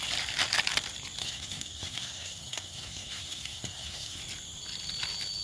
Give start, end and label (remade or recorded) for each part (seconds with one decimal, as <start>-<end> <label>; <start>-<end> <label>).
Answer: 0.0-1.2 recorded; 1.2-4.2 remade; 4.2-5.4 recorded